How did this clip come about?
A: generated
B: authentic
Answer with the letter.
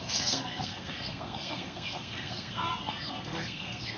A